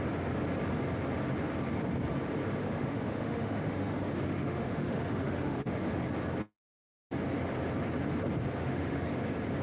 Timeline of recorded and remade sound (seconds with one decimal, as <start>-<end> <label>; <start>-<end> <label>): 0.0-2.6 recorded; 2.6-5.8 remade; 5.8-8.6 recorded; 8.6-9.1 remade; 9.1-9.6 recorded